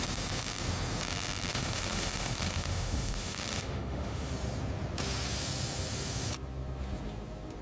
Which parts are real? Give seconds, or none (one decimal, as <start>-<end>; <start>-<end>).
0.0-1.5; 4.3-7.6